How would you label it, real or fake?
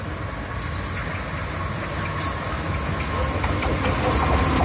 real